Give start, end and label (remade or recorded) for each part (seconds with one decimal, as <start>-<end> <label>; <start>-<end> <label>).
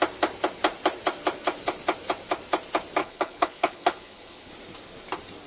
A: 0.0-3.0 recorded; 3.0-4.5 remade; 4.5-5.5 recorded